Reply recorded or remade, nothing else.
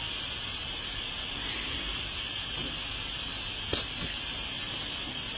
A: recorded